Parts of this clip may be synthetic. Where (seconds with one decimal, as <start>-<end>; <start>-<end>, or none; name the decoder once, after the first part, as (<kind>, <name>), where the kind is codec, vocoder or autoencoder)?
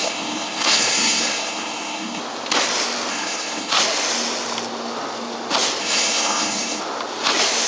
0.0-2.2 (codec, SNAC); 3.1-3.7; 5.8-6.8